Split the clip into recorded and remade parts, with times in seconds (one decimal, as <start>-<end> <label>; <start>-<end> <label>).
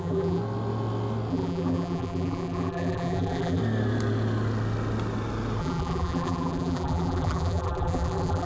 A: 0.0-0.4 remade; 0.4-1.3 recorded; 1.3-3.6 remade; 3.6-5.6 recorded; 5.6-8.5 remade